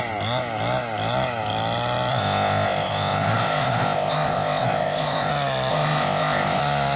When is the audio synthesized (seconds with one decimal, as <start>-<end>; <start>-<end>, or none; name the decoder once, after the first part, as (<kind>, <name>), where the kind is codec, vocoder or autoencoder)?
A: 2.1-5.3 (codec, ZipCodec); 5.7-6.6